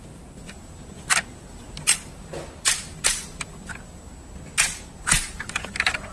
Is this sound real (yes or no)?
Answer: yes